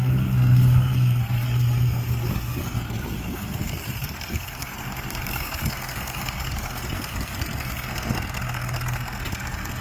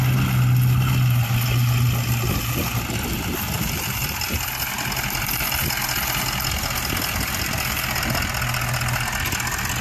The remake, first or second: first